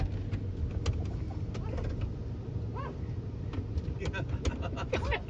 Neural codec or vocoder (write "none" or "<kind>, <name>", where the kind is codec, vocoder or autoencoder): none